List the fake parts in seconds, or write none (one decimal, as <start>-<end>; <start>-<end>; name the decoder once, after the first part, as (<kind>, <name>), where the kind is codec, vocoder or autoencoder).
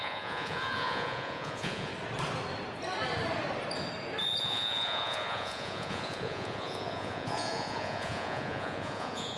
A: 0.0-1.9 (vocoder, Vocos); 4.4-9.4